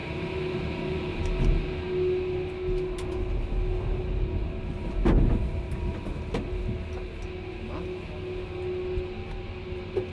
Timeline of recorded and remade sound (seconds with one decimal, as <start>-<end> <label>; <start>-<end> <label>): 0.0-1.2 remade; 1.2-4.4 recorded; 4.4-6.6 remade; 6.6-10.1 recorded